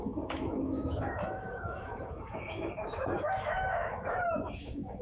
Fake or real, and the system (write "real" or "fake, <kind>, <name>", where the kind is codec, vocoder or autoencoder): fake, autoencoder, DAC-VAE